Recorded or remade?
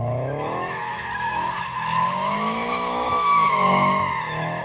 remade